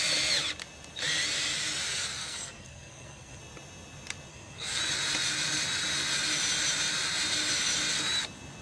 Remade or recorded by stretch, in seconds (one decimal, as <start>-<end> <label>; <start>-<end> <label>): 0.0-2.2 recorded; 2.2-3.4 remade; 3.4-4.3 recorded; 4.3-4.8 remade; 4.8-8.6 recorded